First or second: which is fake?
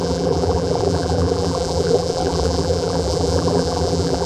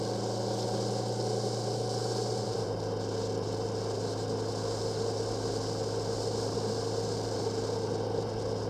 first